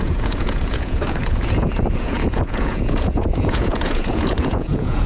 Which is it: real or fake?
fake